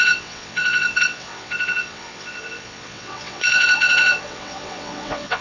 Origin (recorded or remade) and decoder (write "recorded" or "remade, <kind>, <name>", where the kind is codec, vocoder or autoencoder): remade, vocoder, WaveNeXt